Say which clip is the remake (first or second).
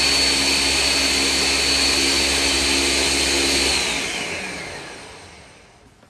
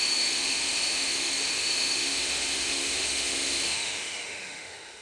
second